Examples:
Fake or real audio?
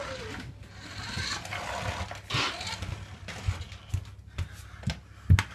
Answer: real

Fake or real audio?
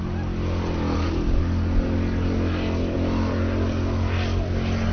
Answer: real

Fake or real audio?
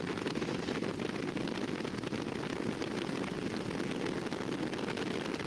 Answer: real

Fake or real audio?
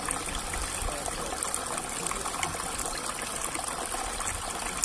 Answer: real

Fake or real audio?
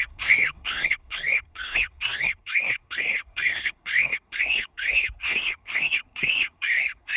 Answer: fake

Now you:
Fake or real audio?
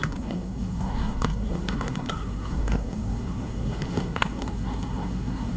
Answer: fake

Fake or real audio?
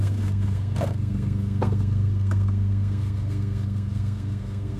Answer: fake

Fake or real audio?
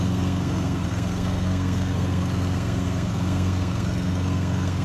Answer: fake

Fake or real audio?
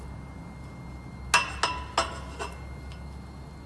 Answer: real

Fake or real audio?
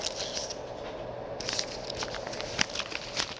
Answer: real